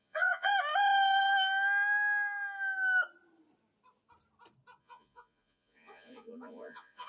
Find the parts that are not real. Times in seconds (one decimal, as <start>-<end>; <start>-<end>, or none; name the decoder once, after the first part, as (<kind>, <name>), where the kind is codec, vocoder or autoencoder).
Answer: 0.0-0.5 (vocoder, Vocos); 4.8-7.1